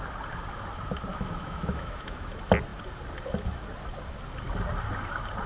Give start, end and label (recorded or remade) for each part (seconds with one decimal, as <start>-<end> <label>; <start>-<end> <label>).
0.0-1.1 recorded; 1.1-2.3 remade; 2.3-5.5 recorded